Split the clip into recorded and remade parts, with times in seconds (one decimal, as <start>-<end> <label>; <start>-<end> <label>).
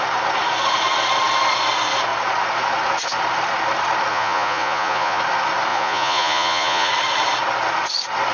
0.0-4.1 recorded; 4.1-5.2 remade; 5.2-5.7 recorded; 5.7-6.9 remade; 6.9-8.3 recorded